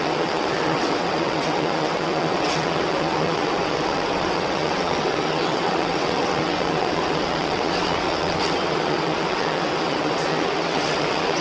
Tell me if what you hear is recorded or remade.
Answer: remade